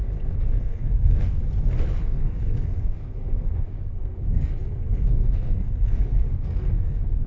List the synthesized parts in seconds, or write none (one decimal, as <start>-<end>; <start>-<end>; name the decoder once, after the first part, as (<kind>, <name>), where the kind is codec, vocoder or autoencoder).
0.0-1.4 (codec, SNAC); 2.0-7.3